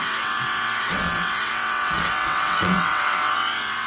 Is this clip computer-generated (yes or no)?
yes